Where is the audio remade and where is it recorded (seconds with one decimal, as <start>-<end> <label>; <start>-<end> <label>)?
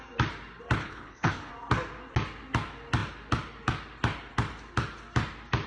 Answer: 0.0-0.8 recorded; 0.8-1.5 remade; 1.5-5.7 recorded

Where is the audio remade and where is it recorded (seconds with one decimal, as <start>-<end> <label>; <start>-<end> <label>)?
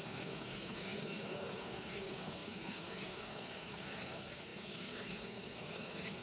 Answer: 0.0-6.2 remade